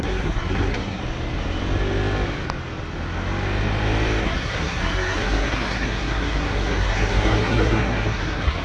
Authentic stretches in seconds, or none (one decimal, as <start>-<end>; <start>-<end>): 1.0-4.2